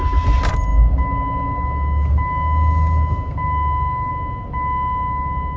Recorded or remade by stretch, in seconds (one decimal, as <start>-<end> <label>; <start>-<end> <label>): 0.0-5.6 recorded